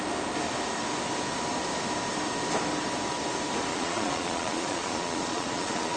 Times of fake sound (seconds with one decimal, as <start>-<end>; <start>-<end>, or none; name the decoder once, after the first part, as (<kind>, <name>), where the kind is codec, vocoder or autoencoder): 3.7-6.0 (vocoder, Vocos)